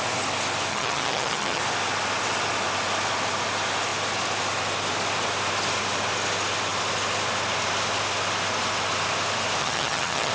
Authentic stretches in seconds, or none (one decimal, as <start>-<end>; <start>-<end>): 0.0-0.7; 1.6-9.6